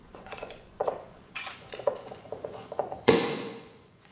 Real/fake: fake